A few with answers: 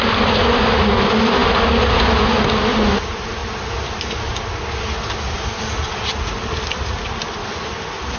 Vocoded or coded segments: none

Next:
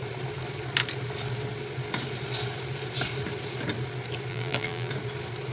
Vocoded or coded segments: 4.3-4.9 (vocoder, BigVGAN v2)

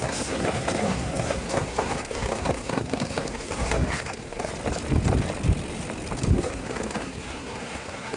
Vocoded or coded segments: 0.0-4.5 (codec, SNAC); 6.3-8.2